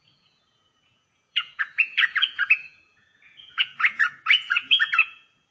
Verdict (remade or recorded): remade